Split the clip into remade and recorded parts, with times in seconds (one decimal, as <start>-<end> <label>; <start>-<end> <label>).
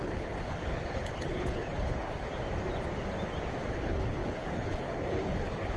0.0-2.3 remade; 2.3-3.7 recorded; 3.7-5.8 remade